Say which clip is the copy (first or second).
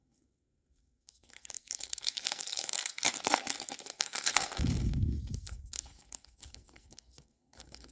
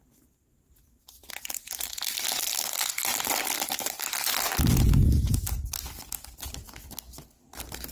first